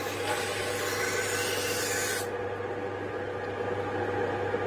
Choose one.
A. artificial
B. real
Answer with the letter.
B